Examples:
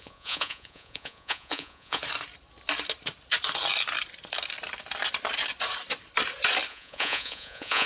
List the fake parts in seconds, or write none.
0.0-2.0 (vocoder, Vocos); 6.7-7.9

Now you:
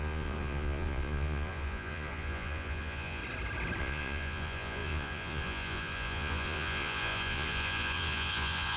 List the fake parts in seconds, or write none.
0.0-3.2 (vocoder, Vocos); 3.8-8.8